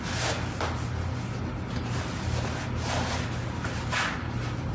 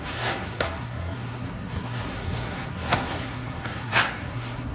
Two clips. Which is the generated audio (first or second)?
second